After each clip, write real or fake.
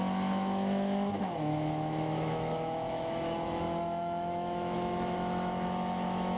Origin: fake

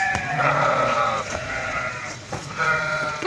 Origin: fake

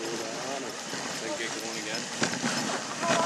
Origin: real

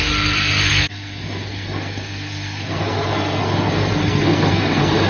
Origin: fake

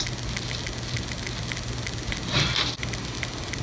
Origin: real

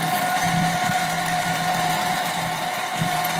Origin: fake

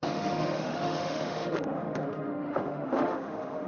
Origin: fake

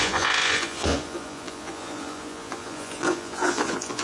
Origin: fake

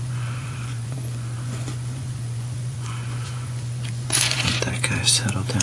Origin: fake